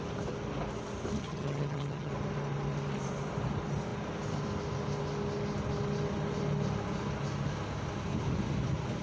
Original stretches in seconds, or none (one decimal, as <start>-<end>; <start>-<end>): 0.0-1.2; 2.1-9.0